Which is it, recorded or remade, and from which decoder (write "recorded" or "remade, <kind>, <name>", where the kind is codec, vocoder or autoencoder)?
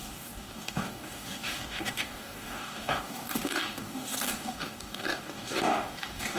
remade, codec, DAC